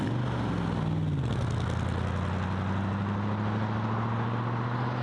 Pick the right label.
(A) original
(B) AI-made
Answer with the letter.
A